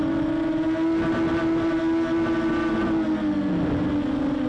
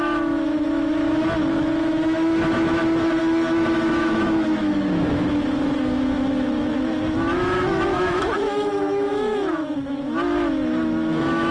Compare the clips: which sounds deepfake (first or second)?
second